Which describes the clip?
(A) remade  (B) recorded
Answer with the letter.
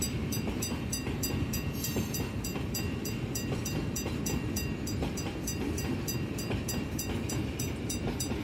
A